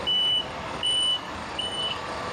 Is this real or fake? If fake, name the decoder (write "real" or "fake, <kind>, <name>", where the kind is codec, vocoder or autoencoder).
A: fake, codec, DAC